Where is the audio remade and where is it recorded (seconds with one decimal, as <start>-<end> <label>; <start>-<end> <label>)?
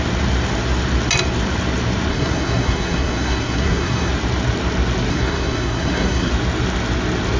0.0-2.1 recorded; 2.1-4.1 remade; 4.1-5.1 recorded; 5.1-6.3 remade; 6.3-7.4 recorded